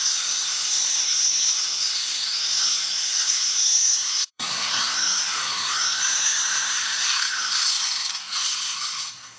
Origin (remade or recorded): remade